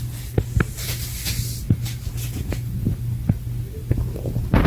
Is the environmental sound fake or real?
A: real